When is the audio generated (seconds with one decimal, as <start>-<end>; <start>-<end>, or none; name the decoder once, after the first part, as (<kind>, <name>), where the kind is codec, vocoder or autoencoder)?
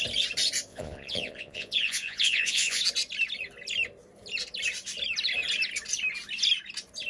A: 0.7-2.8 (vocoder, Vocos)